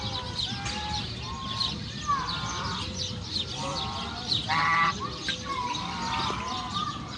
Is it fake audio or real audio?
real